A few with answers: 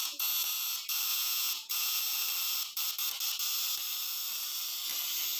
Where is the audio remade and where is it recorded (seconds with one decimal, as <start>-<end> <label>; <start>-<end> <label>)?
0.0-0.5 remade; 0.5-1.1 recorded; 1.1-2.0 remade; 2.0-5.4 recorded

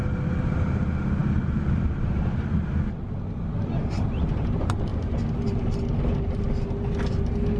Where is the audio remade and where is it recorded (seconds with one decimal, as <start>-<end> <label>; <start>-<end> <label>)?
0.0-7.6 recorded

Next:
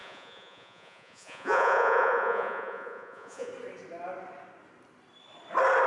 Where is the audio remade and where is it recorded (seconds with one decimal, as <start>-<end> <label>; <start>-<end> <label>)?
0.0-3.5 remade; 3.5-5.9 recorded

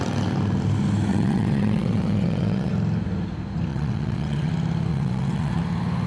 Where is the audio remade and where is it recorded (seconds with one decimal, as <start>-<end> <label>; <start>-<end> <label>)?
0.0-1.1 recorded; 1.1-2.7 remade; 2.7-3.7 recorded; 3.7-4.5 remade; 4.5-4.9 recorded; 4.9-5.6 remade; 5.6-6.1 recorded